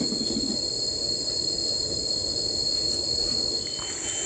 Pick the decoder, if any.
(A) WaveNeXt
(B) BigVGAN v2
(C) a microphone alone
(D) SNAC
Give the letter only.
C